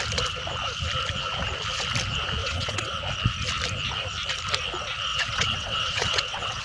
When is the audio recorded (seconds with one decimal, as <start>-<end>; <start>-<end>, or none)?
0.0-2.4; 3.0-5.1